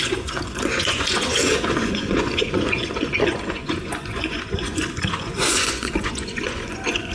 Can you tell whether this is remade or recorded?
remade